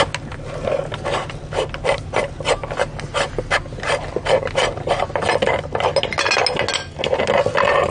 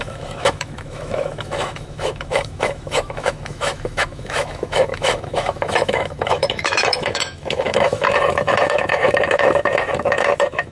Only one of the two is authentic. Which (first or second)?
first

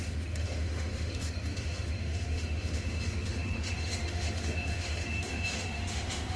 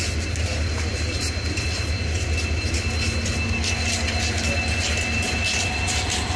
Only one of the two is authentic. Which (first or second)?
second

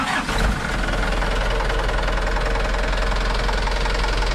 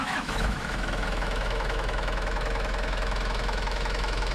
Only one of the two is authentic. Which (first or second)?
first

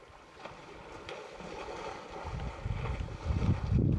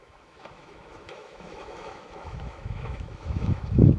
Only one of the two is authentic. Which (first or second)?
first